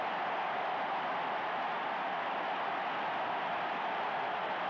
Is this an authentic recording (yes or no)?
yes